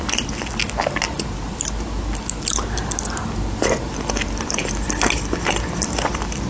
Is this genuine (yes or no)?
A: yes